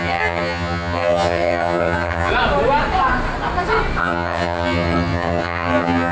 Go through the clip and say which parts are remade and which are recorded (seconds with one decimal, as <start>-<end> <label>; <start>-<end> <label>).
0.0-2.3 remade; 2.3-4.0 recorded; 4.0-6.1 remade